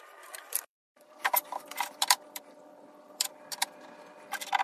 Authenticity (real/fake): fake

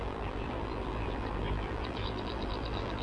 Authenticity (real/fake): fake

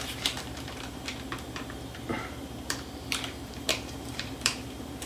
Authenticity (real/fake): fake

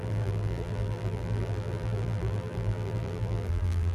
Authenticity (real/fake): fake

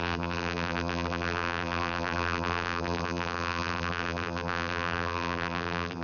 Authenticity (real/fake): fake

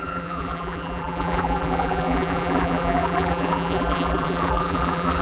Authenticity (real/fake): fake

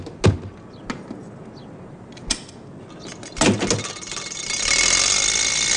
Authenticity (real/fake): real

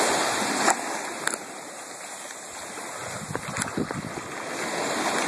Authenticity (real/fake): real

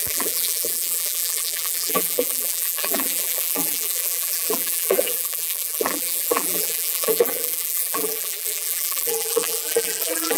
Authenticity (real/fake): fake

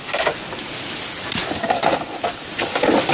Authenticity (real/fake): real